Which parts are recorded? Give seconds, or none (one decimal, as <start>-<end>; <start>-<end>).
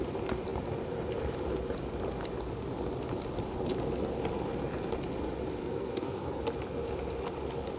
0.0-5.6; 6.4-7.8